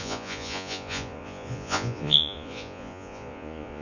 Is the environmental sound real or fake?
fake